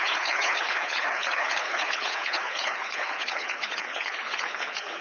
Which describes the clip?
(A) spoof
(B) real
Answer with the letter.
A